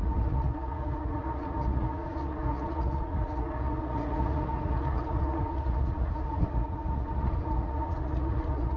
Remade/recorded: remade